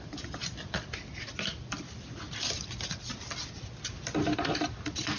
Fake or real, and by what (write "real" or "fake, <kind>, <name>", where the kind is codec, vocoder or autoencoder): real